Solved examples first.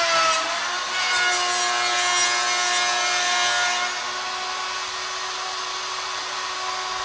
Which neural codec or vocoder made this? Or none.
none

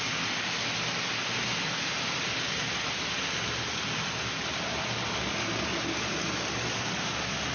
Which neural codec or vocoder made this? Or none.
none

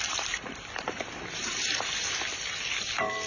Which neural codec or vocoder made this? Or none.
vocoder, BigVGAN v2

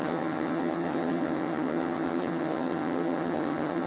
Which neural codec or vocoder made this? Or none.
vocoder, HiFi-GAN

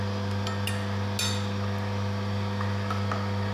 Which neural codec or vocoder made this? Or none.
none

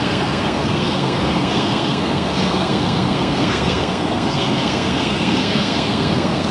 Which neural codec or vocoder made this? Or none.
codec, SNAC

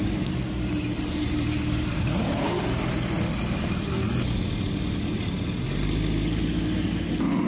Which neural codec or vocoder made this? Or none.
none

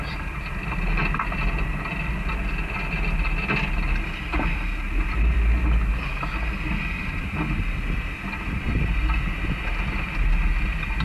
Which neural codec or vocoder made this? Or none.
none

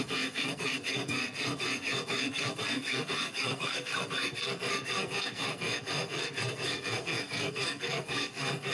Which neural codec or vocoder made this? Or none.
codec, SNAC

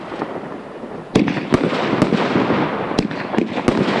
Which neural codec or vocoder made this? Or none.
none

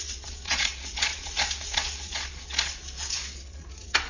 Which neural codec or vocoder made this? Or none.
vocoder, Vocos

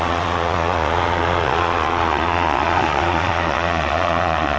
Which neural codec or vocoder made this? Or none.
vocoder, Vocos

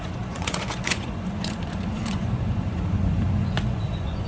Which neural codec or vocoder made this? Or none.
vocoder, Vocos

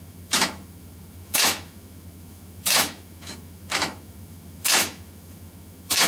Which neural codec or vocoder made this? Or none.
autoencoder, DAC-VAE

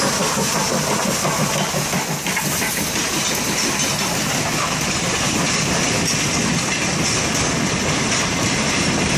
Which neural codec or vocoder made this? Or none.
none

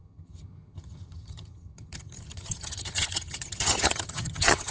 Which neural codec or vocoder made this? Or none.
vocoder, HiFi-GAN